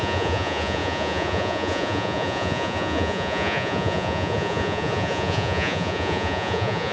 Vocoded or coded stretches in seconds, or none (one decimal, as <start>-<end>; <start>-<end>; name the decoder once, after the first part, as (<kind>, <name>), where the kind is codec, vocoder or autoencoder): 0.0-6.9 (vocoder, Vocos)